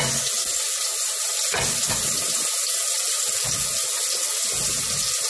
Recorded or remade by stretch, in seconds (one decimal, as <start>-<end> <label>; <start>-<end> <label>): 0.0-5.3 recorded